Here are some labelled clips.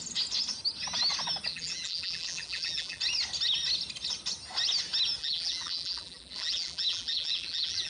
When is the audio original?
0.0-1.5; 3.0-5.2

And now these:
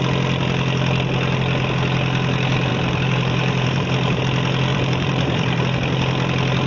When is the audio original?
0.0-2.7; 4.2-4.7; 5.6-6.7

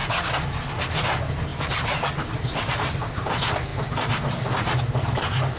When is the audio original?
0.0-1.5; 2.1-3.7; 4.3-5.6

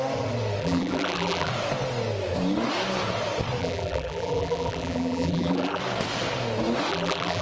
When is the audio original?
0.0-0.6; 1.5-3.6; 5.8-6.9